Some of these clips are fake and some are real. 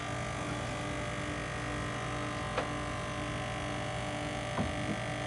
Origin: real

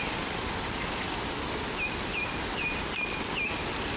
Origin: real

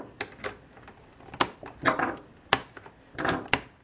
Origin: fake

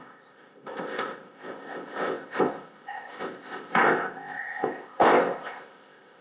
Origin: fake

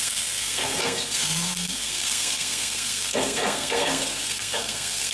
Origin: fake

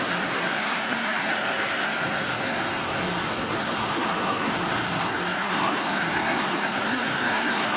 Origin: fake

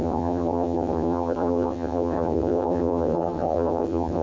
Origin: fake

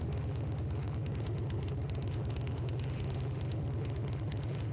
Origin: fake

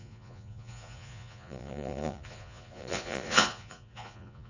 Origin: fake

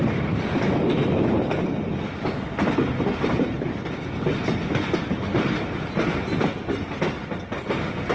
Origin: fake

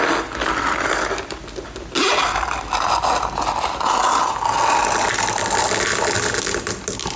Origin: real